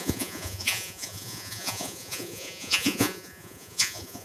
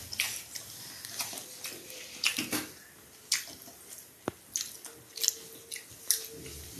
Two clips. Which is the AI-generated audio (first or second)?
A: first